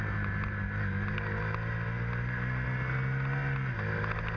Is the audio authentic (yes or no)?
yes